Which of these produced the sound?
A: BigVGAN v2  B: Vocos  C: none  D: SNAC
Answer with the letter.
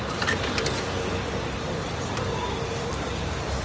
A